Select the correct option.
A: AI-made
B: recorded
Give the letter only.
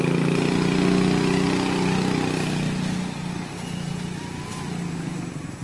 B